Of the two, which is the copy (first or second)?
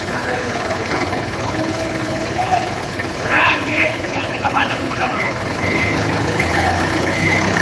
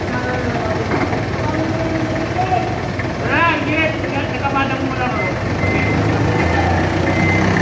first